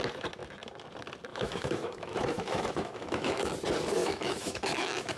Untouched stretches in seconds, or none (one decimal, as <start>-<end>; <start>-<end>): 0.0-1.3; 3.5-4.0